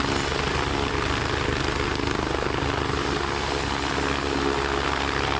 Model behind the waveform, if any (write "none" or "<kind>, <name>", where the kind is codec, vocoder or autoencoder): none